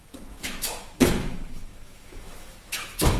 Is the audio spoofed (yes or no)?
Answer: yes